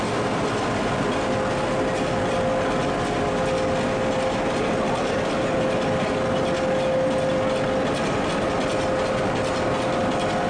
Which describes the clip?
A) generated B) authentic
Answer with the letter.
B